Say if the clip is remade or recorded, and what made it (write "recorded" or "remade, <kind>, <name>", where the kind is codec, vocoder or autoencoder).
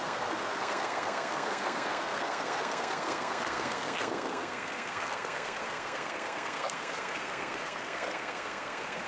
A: remade, codec, SNAC